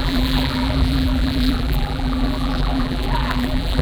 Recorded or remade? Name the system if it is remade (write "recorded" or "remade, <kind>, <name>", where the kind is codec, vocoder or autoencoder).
remade, vocoder, BigVGAN v2